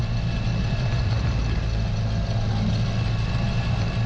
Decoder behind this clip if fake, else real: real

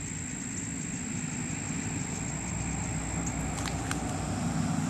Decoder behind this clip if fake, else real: real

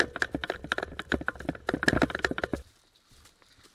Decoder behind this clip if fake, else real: real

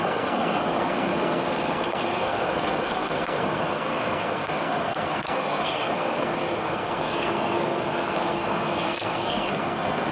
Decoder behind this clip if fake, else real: fake, codec, SNAC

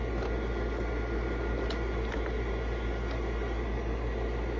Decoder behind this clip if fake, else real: real